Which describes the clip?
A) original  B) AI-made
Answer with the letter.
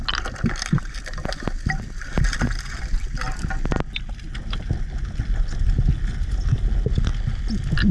A